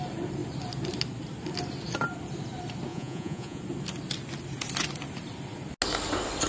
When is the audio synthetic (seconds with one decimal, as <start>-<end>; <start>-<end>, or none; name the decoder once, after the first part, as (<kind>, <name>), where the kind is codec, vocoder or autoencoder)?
2.9-3.6 (vocoder, Vocos)